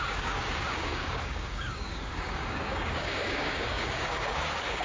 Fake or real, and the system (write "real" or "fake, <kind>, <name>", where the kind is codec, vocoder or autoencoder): fake, codec, DAC